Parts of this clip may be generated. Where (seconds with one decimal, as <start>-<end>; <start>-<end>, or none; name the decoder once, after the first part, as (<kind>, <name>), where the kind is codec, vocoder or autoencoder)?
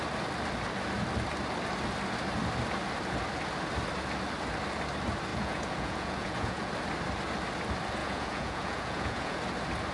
5.3-6.7 (vocoder, Vocos); 8.0-9.4